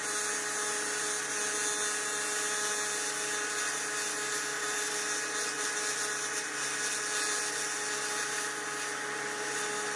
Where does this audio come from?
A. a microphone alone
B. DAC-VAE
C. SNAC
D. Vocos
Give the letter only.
A